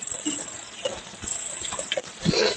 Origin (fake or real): fake